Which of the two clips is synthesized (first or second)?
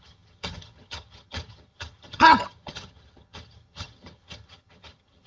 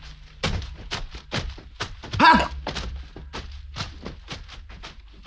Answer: first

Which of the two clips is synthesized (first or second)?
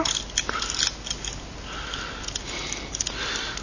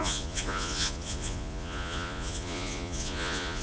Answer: second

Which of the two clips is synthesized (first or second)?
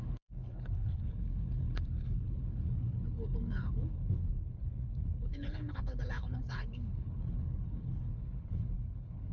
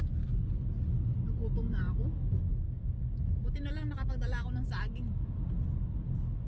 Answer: first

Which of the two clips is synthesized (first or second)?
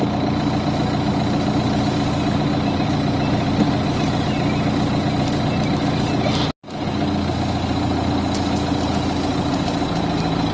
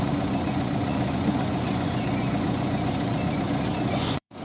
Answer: second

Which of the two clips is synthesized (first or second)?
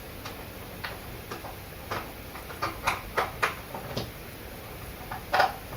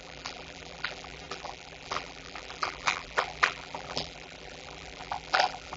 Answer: second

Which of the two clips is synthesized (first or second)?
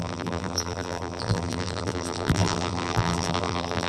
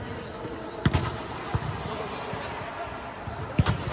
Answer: first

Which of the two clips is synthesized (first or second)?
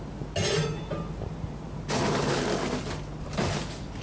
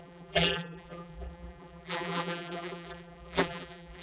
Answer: second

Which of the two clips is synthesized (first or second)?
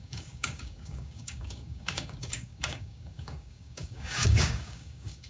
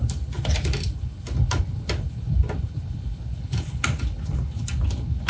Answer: first